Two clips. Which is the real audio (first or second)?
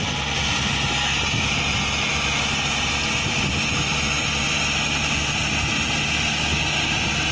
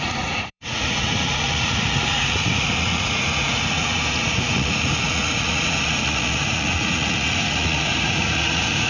first